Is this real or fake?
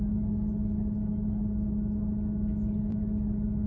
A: real